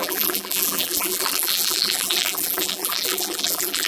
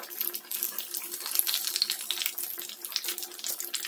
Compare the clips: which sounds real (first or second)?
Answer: second